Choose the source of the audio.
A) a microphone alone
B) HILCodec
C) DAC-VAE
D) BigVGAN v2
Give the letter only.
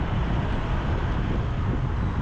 A